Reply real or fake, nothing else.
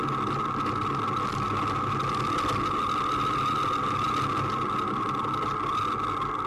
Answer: real